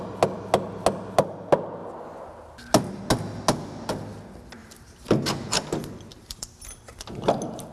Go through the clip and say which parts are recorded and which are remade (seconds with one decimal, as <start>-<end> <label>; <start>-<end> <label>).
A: 0.0-4.6 recorded; 4.6-5.3 remade; 5.3-6.1 recorded; 6.1-6.8 remade; 6.8-7.7 recorded

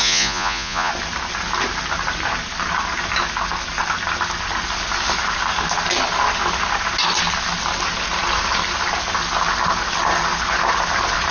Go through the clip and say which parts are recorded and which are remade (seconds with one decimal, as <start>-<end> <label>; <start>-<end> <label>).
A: 0.0-0.9 remade; 0.9-11.3 recorded

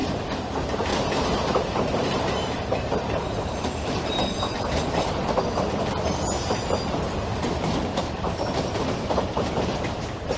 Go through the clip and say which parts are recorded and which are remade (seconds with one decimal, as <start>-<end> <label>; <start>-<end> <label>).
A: 0.0-0.5 remade; 0.5-0.9 recorded; 0.9-4.3 remade; 4.3-7.9 recorded; 7.9-9.4 remade; 9.4-10.4 recorded

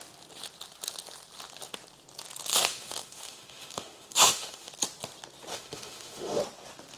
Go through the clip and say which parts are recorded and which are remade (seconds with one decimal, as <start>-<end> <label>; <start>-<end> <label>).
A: 0.0-2.5 recorded; 2.5-4.7 remade; 4.7-5.5 recorded; 5.5-6.4 remade; 6.4-7.0 recorded

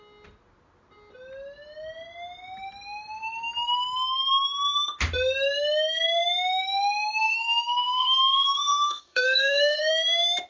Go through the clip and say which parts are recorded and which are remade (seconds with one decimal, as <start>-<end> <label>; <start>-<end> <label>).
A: 0.0-7.2 recorded; 7.2-9.9 remade; 9.9-10.5 recorded

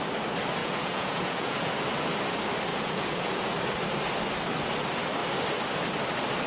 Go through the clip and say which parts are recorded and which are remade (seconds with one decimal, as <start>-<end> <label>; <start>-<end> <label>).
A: 0.0-0.6 recorded; 0.6-1.7 remade; 1.7-2.7 recorded; 2.7-3.5 remade; 3.5-6.5 recorded